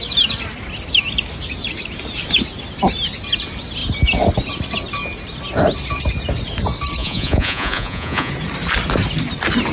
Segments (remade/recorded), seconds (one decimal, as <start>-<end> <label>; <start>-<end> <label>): 0.0-7.0 recorded; 7.0-8.3 remade; 8.3-9.7 recorded